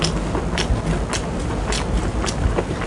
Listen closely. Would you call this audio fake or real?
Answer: real